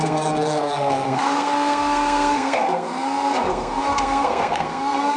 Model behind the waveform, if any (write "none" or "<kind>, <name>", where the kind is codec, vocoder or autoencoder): codec, SNAC